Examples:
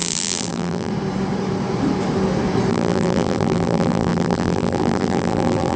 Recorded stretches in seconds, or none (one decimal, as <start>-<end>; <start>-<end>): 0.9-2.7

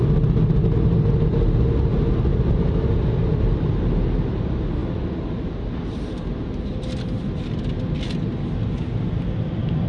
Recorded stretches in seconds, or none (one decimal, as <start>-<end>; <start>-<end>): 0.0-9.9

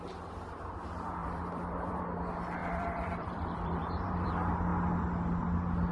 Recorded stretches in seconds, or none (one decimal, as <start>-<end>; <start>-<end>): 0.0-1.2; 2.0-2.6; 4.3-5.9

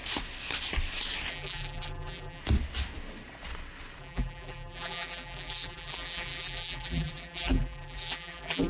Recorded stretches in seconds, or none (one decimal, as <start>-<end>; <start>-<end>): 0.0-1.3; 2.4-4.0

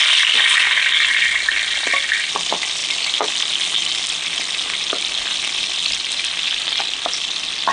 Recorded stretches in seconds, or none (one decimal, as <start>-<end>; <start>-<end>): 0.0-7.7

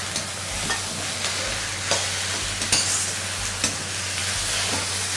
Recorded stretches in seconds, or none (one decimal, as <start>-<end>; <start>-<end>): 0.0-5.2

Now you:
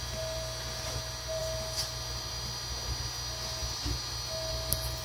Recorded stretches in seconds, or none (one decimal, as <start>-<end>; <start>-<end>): none

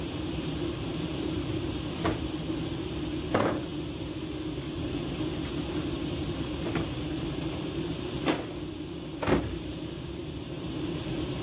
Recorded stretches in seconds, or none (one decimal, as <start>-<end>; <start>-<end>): 3.7-4.7; 8.2-9.4